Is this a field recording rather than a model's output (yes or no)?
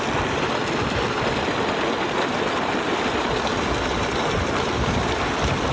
yes